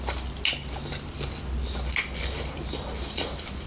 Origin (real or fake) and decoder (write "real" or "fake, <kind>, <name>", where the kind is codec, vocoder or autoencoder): real